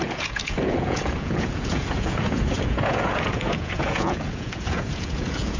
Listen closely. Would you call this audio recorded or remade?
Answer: remade